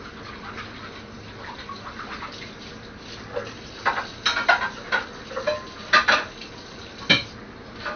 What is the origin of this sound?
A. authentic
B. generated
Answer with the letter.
A